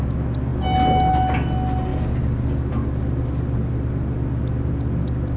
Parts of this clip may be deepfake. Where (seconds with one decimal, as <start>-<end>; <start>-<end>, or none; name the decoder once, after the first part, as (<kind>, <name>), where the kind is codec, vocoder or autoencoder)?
none